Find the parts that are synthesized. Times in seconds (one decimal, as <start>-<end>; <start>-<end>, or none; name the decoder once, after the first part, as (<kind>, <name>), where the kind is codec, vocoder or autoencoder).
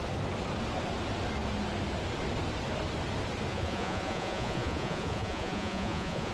3.5-6.3 (vocoder, Vocos)